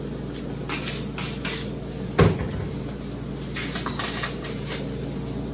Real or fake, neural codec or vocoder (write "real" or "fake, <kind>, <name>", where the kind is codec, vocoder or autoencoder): real